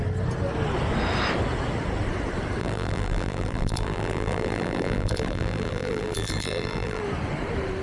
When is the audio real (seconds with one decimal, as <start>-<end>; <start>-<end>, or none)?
0.0-2.6; 7.0-7.8